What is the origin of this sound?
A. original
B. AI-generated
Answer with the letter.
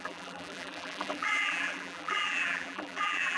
B